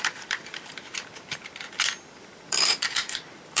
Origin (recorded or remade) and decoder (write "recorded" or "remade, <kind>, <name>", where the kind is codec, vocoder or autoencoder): remade, vocoder, BigVGAN v2